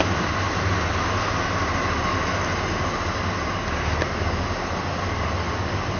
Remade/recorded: recorded